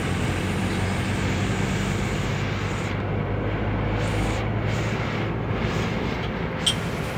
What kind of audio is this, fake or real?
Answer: real